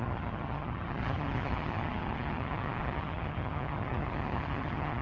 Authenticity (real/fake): fake